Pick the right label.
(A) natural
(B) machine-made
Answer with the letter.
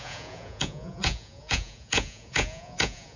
B